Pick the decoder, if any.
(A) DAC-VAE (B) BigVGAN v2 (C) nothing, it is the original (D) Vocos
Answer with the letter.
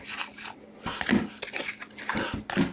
C